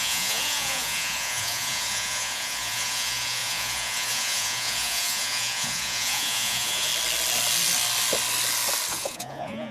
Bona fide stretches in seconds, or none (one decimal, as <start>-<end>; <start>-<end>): 6.9-8.9